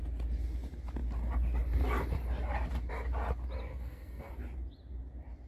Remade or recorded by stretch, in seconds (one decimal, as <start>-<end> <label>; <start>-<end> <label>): 0.0-3.7 recorded; 3.7-4.3 remade; 4.3-5.5 recorded